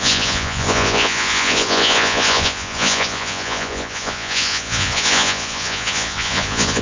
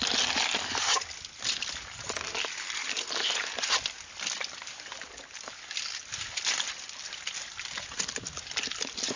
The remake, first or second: first